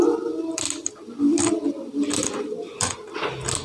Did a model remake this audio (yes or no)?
no